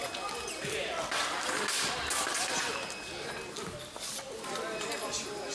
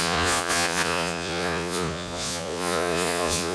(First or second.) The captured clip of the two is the first